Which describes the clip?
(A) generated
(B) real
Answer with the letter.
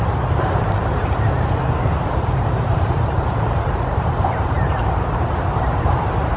A